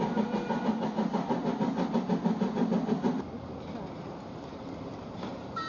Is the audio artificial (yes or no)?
no